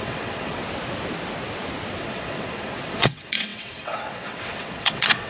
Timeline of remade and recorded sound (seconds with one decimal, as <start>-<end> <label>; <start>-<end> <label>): 0.0-0.6 remade; 0.6-2.0 recorded; 2.0-5.3 remade